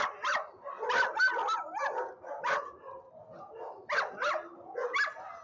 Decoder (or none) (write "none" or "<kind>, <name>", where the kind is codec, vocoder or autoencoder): none